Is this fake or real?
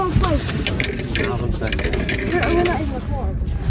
real